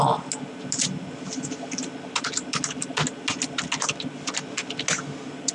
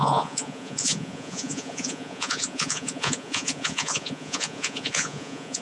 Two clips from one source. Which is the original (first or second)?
first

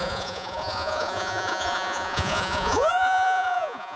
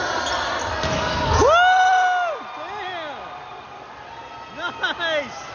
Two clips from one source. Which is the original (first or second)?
second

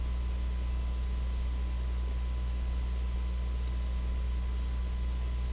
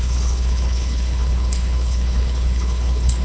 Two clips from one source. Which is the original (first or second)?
first